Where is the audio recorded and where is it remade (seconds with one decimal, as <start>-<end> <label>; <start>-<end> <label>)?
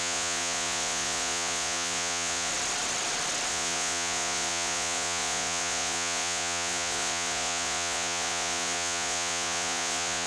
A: 0.0-2.5 remade; 2.5-3.5 recorded; 3.5-10.3 remade